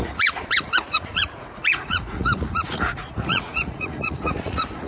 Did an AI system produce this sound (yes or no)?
yes